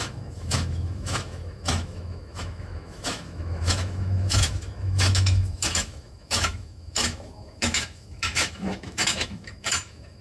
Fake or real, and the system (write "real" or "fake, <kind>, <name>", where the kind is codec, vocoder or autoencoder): fake, autoencoder, DAC-VAE